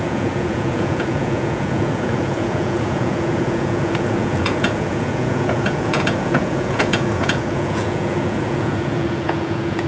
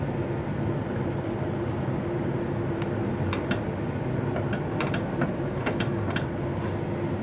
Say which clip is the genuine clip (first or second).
second